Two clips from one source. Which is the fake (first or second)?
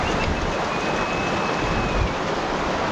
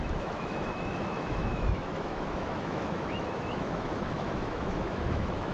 second